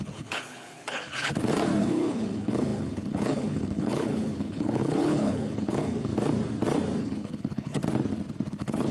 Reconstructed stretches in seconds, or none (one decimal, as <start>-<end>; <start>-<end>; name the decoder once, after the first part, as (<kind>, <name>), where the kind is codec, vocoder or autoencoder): 0.0-1.3 (codec, HILCodec); 1.8-6.1; 7.0-7.8; 8.5-8.9